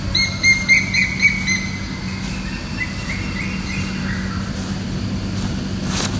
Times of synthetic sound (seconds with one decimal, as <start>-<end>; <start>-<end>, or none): none